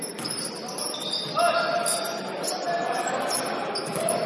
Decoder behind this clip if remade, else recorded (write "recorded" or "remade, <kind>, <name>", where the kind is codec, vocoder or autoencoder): recorded